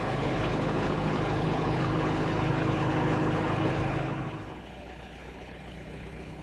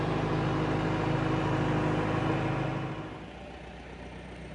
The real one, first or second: second